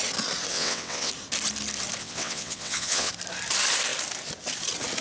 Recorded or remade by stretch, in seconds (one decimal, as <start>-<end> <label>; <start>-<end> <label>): 0.0-0.5 recorded; 0.5-1.1 remade; 1.1-2.0 recorded; 2.0-3.1 remade; 3.1-5.0 recorded